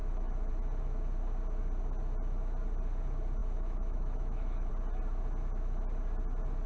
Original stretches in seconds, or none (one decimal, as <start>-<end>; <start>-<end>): 0.5-3.4; 4.7-6.7